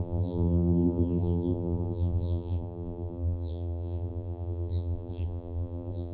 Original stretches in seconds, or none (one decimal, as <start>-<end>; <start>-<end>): none